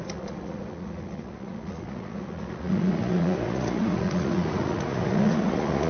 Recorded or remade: remade